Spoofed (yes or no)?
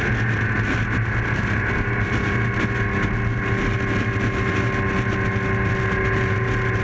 no